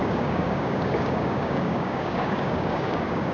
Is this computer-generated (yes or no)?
yes